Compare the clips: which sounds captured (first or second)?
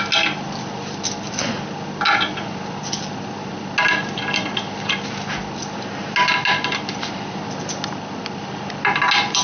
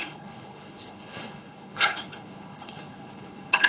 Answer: first